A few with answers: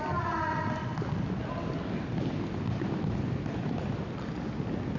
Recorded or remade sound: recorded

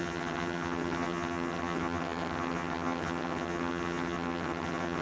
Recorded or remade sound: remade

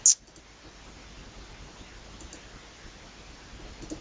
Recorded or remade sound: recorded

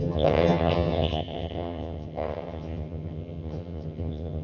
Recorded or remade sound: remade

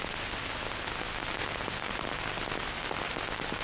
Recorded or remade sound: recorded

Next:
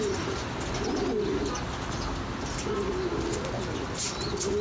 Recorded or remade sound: recorded